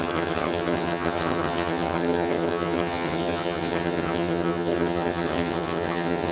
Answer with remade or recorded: remade